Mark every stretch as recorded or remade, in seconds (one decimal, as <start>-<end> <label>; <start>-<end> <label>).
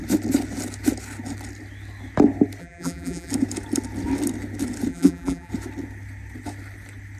0.0-2.6 recorded; 2.6-3.3 remade; 3.3-4.9 recorded; 4.9-5.5 remade; 5.5-7.2 recorded